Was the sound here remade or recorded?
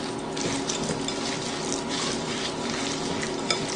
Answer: recorded